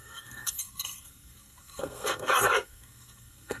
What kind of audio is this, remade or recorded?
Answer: remade